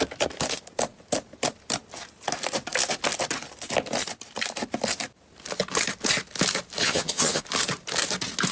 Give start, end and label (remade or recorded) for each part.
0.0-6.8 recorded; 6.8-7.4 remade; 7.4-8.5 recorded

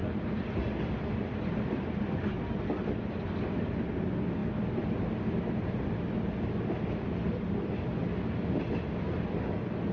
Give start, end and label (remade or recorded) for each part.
0.0-9.9 recorded

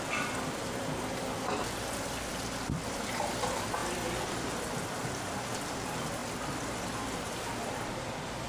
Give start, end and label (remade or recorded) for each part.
0.0-8.5 remade